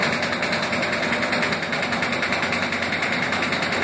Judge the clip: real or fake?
real